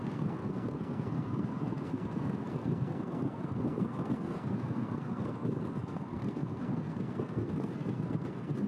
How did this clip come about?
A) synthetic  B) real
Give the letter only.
A